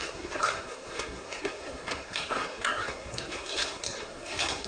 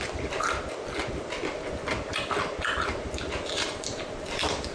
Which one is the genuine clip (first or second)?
second